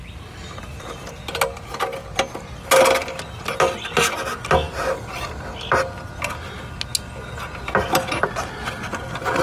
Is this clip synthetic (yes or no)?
no